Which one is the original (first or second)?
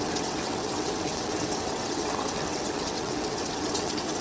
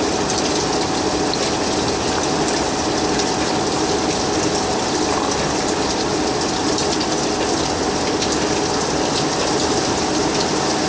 second